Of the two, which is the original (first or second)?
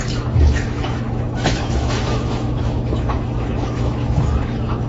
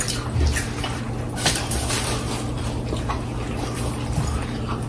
second